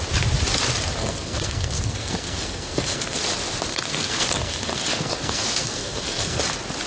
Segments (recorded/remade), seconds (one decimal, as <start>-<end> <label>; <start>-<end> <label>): 0.0-1.0 recorded; 1.0-3.2 remade; 3.2-3.7 recorded; 3.7-6.4 remade; 6.4-6.9 recorded